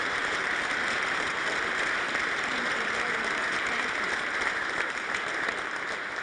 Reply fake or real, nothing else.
fake